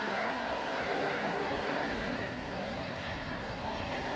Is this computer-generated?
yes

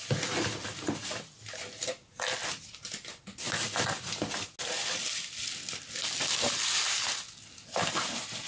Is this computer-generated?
no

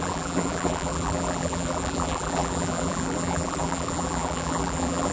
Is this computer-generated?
yes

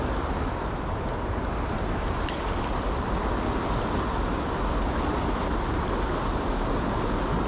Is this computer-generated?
no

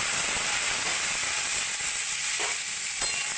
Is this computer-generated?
no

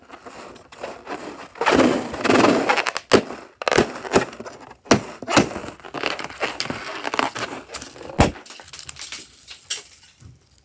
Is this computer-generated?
no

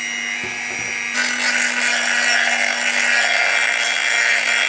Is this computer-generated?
no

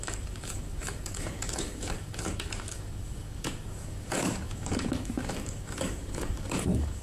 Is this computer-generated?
yes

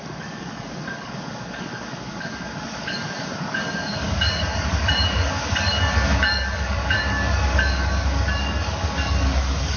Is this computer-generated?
yes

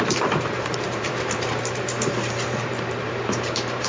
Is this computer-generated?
yes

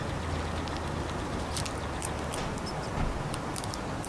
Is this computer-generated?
no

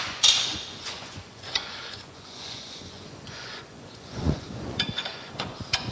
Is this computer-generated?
yes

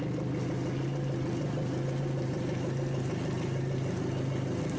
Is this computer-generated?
no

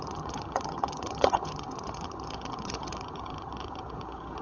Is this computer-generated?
yes